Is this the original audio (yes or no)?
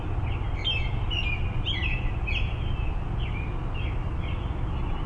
yes